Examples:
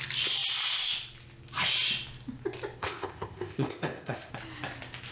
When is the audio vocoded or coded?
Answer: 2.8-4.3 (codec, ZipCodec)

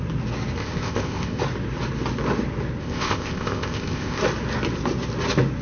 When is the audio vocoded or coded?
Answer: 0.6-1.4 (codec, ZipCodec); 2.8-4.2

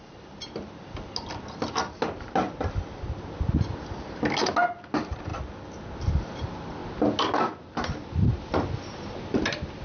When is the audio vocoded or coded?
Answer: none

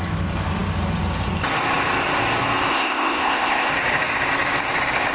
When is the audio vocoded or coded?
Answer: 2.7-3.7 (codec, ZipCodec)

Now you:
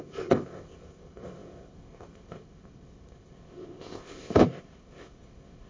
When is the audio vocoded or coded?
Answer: 0.0-5.7 (codec, ZipCodec)

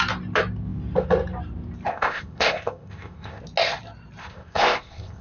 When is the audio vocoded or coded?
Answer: 1.9-3.4 (codec, ZipCodec); 4.2-5.2

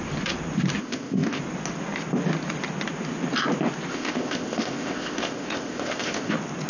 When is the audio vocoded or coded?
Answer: 0.8-1.4 (codec, ZipCodec); 3.9-6.3

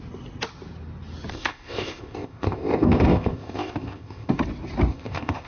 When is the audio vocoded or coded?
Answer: 1.3-4.3 (codec, ZipCodec); 4.9-5.5